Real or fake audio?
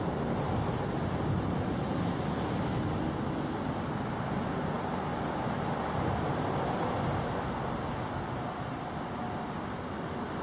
real